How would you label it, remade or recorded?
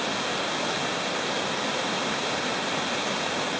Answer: recorded